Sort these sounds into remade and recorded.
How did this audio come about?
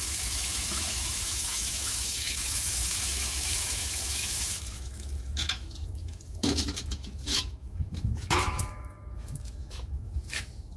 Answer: remade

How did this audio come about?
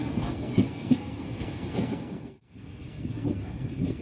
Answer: remade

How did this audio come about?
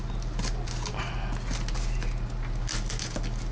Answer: recorded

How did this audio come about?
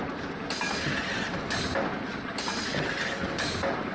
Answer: recorded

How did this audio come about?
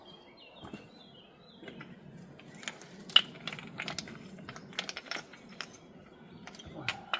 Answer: recorded